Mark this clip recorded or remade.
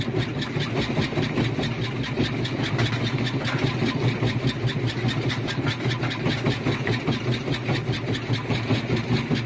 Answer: recorded